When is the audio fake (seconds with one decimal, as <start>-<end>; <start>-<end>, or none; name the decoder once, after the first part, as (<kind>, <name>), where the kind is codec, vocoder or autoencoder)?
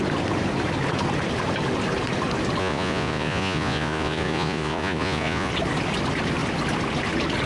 2.6-5.5 (vocoder, Vocos)